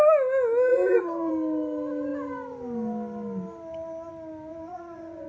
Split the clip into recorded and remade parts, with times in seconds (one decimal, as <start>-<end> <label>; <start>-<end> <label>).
0.0-0.7 recorded; 0.7-1.3 remade; 1.3-4.5 recorded; 4.5-5.3 remade